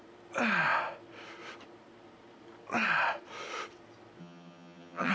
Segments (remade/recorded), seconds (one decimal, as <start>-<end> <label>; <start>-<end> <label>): 0.0-4.2 recorded; 4.2-5.1 remade